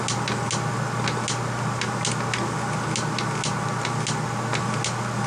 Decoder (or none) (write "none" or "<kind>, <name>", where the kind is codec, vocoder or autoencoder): none